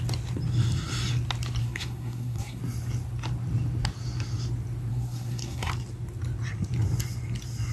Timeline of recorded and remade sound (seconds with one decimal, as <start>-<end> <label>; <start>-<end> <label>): 0.0-1.6 recorded; 1.6-2.6 remade; 2.6-4.9 recorded; 4.9-5.7 remade; 5.7-7.7 recorded